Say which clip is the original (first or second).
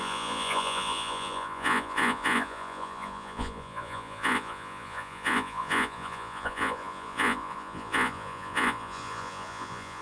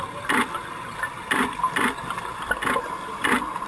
second